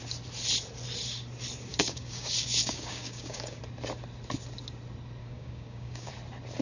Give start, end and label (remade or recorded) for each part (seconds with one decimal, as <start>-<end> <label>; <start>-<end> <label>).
0.0-1.7 recorded; 1.7-3.6 remade; 3.6-5.2 recorded; 5.2-6.1 remade; 6.1-6.6 recorded